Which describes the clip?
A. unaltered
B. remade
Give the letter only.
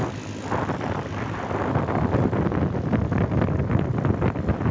A